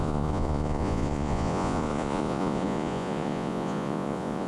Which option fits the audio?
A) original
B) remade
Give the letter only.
B